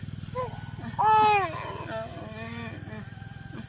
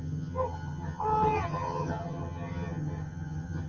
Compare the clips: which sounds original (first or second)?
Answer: first